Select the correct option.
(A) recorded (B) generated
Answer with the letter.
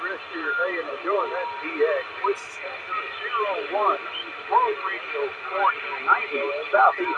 A